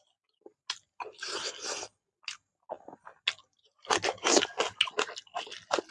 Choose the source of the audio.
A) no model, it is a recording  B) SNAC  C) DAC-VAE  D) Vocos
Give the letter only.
A